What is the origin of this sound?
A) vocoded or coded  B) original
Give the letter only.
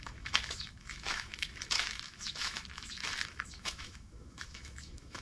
A